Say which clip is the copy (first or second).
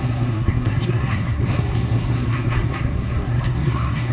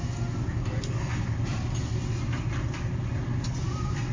first